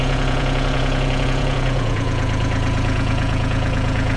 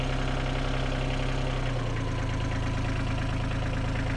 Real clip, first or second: second